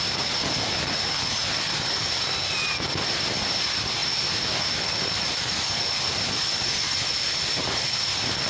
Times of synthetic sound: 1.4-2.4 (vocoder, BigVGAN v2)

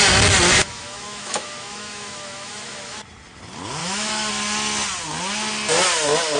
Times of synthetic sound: 0.6-3.0 (autoencoder, DAC-VAE); 3.8-4.3

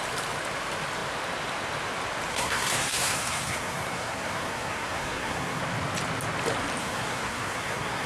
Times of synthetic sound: 2.3-5.6 (codec, SNAC); 6.8-8.1

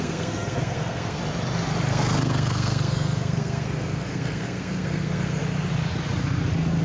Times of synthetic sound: 0.0-1.2 (codec, SNAC); 1.9-5.4

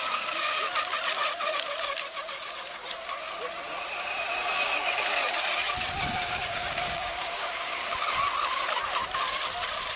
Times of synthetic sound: 6.2-7.9 (codec, DAC)

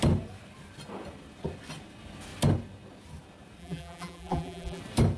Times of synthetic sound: 3.6-4.8 (vocoder, BigVGAN v2)

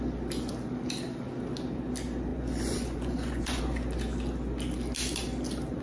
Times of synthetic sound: 2.3-3.6 (vocoder, Vocos)

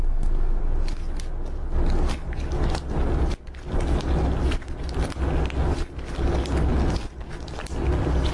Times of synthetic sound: 0.0-0.6 (codec, SNAC)